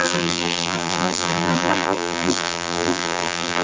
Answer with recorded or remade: remade